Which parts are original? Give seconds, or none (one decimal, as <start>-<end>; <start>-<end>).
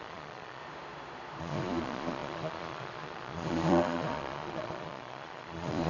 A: 0.6-1.4